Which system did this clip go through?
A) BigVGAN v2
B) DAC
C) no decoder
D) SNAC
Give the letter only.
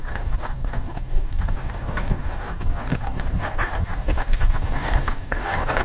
B